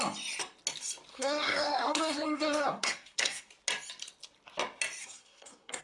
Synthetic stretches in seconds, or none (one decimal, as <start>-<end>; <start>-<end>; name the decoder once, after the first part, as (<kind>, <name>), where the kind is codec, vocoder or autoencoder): 1.1-3.5 (codec, SNAC); 5.0-5.8